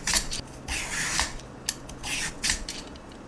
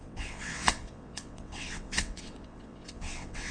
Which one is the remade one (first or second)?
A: second